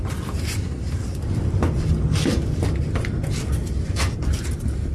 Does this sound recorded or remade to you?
recorded